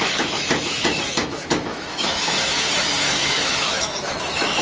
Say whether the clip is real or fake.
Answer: fake